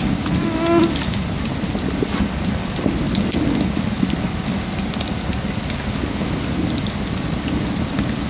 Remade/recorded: recorded